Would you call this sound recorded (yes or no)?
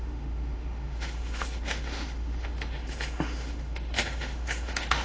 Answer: no